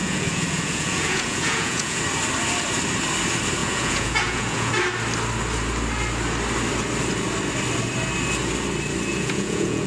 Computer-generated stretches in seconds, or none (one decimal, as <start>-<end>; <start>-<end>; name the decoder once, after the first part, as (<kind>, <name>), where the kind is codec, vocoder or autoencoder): 0.0-2.0 (vocoder, Vocos); 3.6-4.7; 9.1-9.9